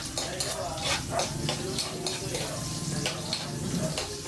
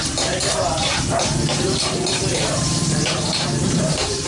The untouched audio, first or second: first